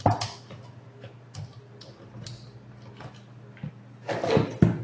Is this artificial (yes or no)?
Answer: no